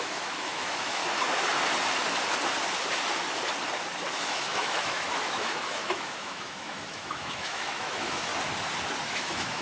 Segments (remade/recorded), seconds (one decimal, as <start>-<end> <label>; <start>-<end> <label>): 0.0-1.0 remade; 1.0-4.1 recorded; 4.1-8.3 remade; 8.3-9.1 recorded; 9.1-9.6 remade